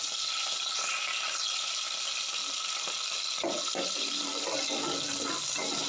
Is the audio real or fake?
real